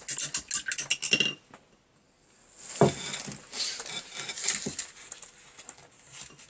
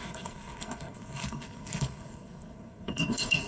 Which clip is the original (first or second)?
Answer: first